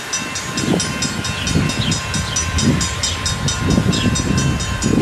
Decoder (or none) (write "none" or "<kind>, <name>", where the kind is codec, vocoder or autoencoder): none